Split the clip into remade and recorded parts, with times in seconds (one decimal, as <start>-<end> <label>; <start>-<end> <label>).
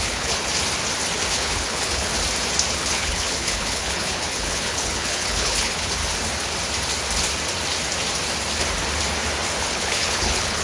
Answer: 0.0-0.5 remade; 0.5-1.3 recorded; 1.3-2.1 remade; 2.1-2.7 recorded; 2.7-6.0 remade; 6.0-9.6 recorded; 9.6-10.6 remade